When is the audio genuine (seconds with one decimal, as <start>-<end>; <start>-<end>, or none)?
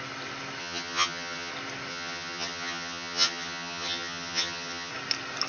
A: 0.0-0.6; 1.5-1.9; 4.9-5.5